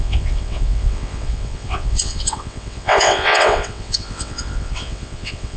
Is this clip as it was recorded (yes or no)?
no